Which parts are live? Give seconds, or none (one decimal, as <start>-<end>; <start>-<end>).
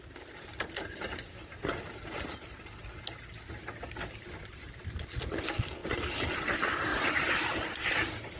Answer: 0.0-8.4